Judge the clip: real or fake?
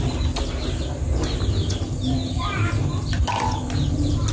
real